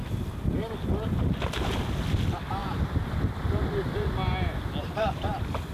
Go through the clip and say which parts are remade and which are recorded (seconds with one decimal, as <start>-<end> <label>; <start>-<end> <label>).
0.0-2.6 recorded; 2.6-4.1 remade; 4.1-4.8 recorded; 4.8-5.3 remade; 5.3-5.7 recorded